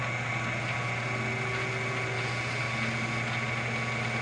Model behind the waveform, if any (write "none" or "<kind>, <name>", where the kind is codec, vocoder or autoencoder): none